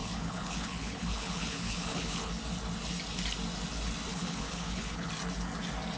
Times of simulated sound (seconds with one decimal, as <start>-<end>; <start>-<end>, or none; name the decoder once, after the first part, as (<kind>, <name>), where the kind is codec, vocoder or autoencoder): 0.0-2.3 (codec, HILCodec); 4.1-5.1